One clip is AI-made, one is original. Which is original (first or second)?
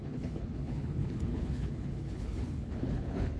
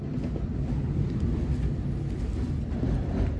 second